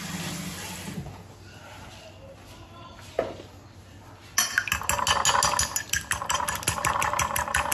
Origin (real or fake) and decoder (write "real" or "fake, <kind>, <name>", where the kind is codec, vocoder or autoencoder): real